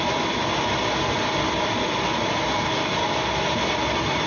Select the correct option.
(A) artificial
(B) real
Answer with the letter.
B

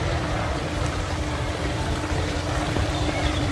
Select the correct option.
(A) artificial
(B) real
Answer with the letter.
A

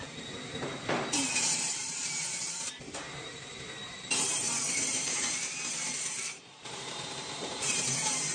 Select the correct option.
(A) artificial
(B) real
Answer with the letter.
A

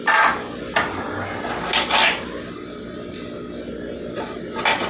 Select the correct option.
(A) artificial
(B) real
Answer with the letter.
B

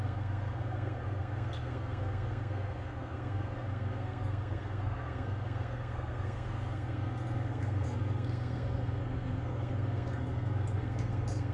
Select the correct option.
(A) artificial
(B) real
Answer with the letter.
A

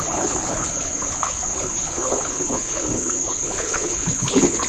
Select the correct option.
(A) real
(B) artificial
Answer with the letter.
B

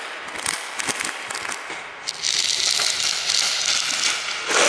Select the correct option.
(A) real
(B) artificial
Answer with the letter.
A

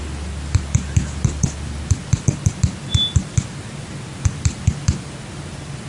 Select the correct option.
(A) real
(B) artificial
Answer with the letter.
A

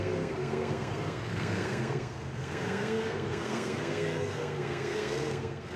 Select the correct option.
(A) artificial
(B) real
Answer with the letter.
A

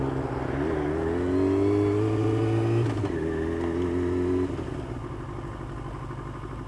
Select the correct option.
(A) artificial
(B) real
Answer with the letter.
B